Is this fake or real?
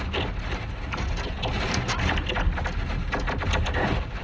real